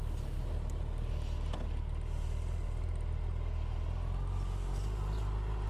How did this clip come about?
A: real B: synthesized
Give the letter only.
A